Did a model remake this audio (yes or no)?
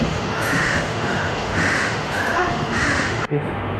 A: yes